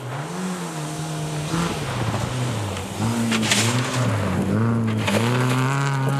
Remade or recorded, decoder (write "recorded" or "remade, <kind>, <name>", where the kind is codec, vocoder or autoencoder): recorded